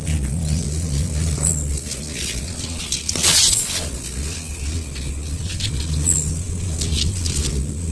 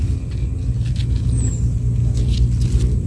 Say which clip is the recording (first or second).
second